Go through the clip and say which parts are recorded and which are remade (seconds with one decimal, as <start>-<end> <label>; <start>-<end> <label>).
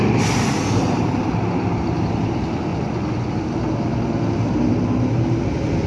0.0-2.7 recorded; 2.7-3.3 remade; 3.3-5.9 recorded